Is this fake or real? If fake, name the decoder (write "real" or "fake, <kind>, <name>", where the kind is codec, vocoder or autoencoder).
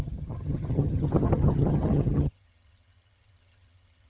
fake, vocoder, HiFi-GAN